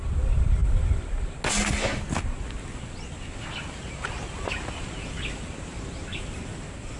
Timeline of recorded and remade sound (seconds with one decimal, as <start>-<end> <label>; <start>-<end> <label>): 0.0-7.0 recorded